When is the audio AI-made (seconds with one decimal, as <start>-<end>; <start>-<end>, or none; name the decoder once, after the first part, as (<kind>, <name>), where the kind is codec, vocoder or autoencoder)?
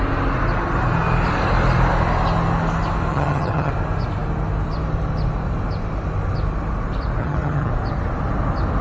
3.1-3.7 (vocoder, HiFi-GAN); 7.2-7.7